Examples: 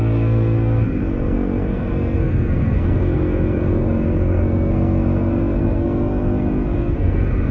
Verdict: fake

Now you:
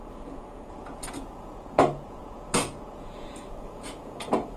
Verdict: fake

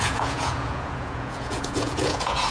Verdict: fake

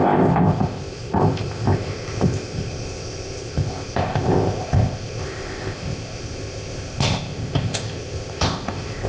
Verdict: fake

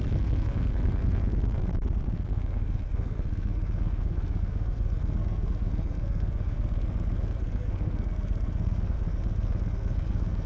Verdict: fake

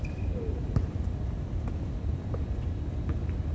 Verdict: real